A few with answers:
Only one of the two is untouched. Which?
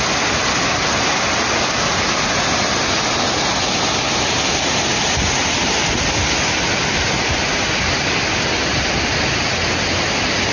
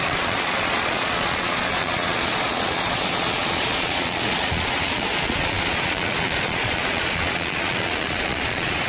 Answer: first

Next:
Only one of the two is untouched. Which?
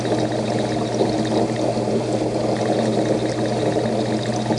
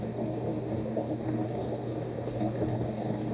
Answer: first